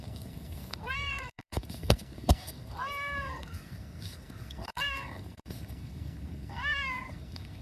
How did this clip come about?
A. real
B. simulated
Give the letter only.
B